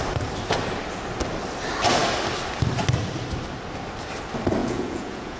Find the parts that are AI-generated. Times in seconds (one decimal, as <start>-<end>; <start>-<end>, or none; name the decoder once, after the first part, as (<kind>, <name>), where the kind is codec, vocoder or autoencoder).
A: 4.6-5.4 (vocoder, Vocos)